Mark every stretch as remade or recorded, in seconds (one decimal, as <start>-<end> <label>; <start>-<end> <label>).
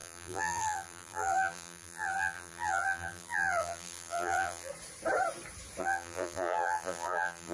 0.0-4.7 remade; 4.7-5.8 recorded; 5.8-7.5 remade